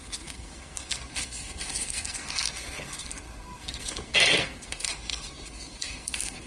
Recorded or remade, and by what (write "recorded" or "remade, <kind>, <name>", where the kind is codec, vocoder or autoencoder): remade, codec, SNAC